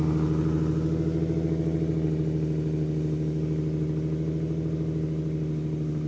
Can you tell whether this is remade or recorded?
recorded